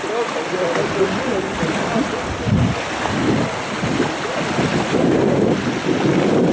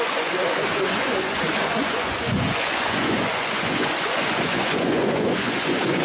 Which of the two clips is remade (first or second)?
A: second